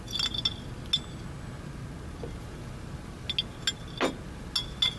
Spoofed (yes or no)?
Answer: no